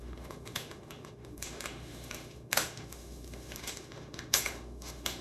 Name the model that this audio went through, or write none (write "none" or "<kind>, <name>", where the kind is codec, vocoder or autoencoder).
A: autoencoder, DAC-VAE